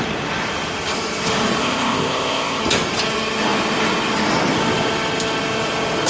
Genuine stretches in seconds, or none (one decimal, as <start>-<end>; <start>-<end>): 0.0-1.6; 2.6-6.1